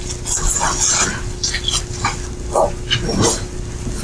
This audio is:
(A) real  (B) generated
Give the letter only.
A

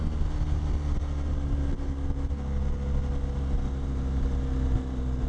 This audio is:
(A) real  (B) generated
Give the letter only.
A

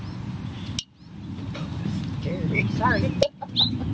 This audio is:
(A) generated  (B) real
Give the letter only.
B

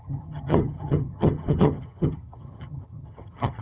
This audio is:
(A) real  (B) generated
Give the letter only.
B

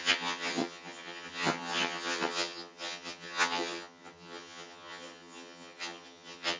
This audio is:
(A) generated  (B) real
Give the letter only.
A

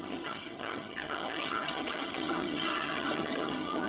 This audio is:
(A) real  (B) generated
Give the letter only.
B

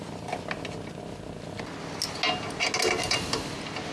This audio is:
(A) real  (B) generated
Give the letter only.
A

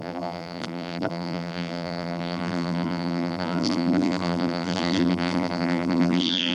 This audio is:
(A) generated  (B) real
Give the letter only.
A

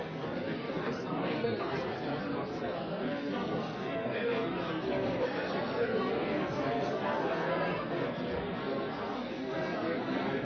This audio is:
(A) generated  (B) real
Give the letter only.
A